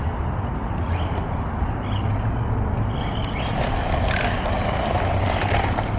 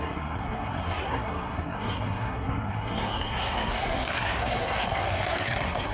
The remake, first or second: second